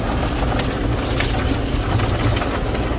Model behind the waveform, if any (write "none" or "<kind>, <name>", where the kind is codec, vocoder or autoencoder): none